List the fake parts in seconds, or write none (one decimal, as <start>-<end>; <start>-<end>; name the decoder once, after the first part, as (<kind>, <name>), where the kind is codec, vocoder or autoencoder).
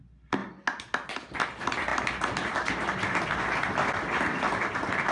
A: none